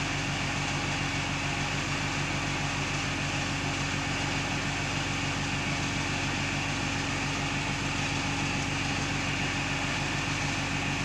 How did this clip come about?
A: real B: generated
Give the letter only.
A